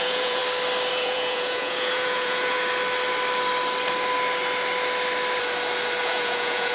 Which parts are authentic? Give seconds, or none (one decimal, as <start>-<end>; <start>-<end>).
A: 0.4-0.9; 2.6-6.0